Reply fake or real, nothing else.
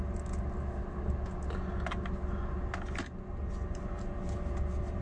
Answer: real